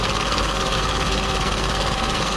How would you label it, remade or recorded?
remade